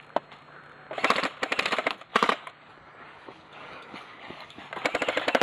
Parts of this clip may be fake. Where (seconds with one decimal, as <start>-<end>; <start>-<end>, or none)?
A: 2.1-4.6